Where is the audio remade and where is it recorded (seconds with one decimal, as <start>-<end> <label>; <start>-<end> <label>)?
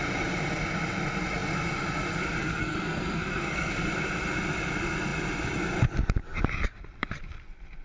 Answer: 0.0-2.4 recorded; 2.4-3.7 remade; 3.7-7.8 recorded